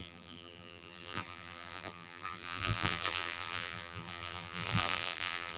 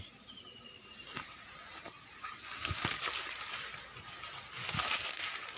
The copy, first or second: first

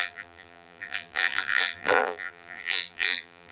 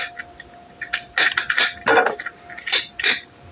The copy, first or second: first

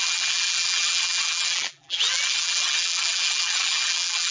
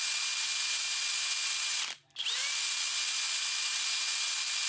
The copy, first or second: first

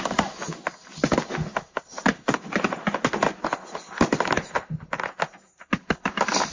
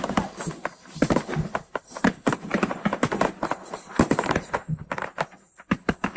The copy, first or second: second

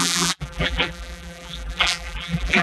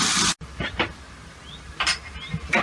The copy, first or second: first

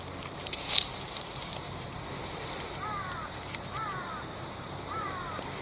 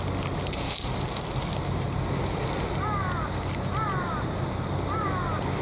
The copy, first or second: first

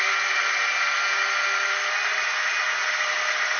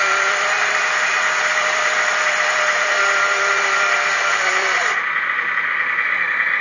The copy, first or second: second